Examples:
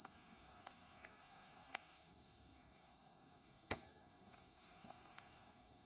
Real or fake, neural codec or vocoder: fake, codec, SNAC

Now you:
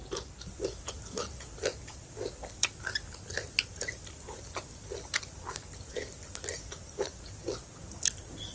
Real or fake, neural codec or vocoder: real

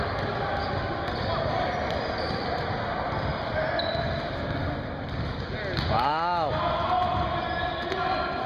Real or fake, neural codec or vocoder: real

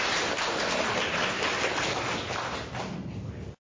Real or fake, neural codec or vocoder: real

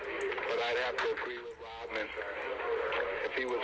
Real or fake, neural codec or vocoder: real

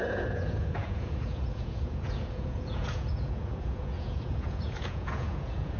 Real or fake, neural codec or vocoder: fake, vocoder, Vocos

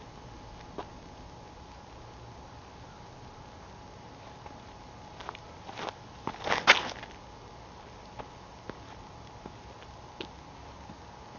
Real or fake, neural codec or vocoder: real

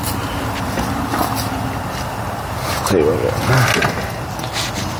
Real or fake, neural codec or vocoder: real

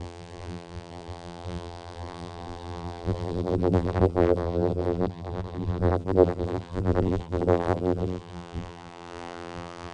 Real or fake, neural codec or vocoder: fake, vocoder, BigVGAN v2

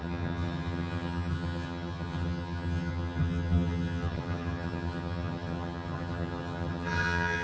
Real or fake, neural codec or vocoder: fake, vocoder, HiFi-GAN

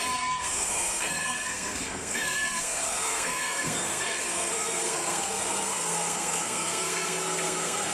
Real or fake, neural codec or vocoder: fake, codec, SNAC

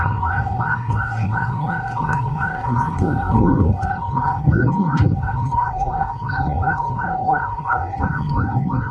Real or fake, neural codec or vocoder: fake, codec, SNAC